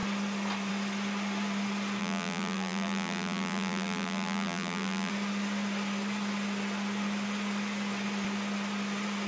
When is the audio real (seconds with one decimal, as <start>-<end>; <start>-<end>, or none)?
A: 0.0-2.0; 5.1-9.3